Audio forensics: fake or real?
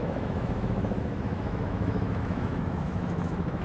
fake